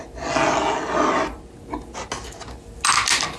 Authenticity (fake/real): real